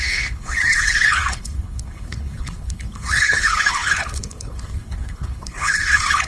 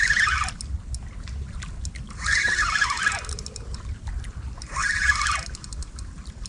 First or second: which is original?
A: second